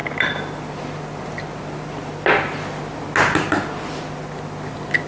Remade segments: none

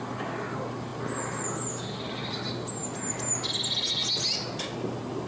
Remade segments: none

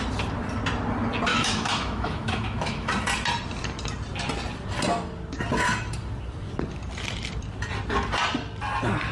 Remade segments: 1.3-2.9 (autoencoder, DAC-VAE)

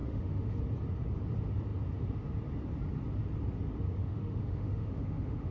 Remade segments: 0.0-0.6 (autoencoder, DAC-VAE); 4.0-5.5

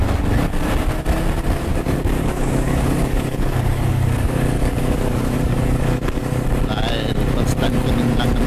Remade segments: 1.7-6.2 (codec, DAC)

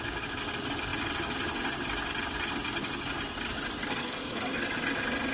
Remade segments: 3.9-4.6 (codec, SNAC)